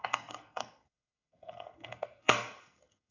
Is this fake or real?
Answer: fake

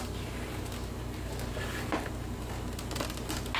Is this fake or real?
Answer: real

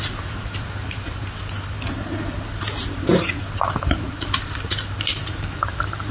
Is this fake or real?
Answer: fake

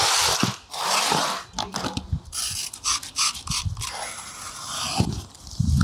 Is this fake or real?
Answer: real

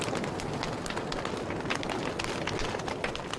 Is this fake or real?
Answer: real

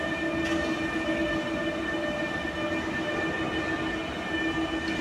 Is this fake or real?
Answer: real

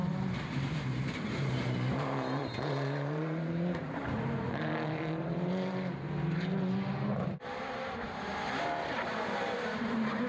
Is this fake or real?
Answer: fake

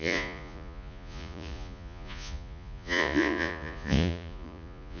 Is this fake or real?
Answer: fake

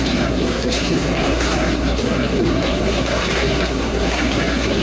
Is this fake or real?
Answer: fake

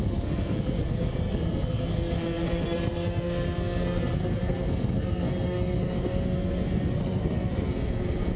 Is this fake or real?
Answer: fake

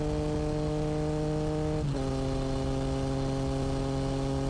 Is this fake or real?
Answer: real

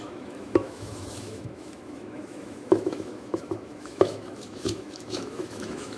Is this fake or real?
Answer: fake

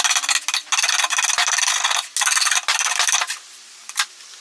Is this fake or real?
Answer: real